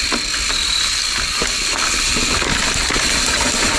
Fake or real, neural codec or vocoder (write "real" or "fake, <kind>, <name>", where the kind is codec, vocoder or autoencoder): real